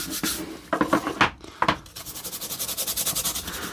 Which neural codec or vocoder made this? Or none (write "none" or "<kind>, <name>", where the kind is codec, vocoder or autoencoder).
none